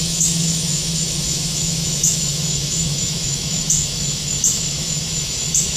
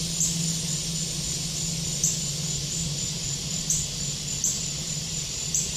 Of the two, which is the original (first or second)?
second